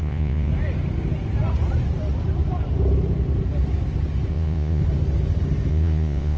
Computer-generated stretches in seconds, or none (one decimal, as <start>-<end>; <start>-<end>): 0.0-0.5; 4.3-4.8; 5.7-6.4